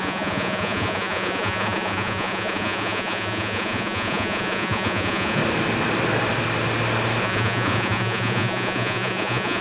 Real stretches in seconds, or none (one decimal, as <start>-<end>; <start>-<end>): 5.4-7.2